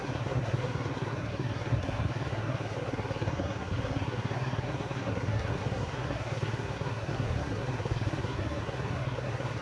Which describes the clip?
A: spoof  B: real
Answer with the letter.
A